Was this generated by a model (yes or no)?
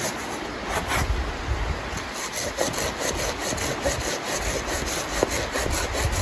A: no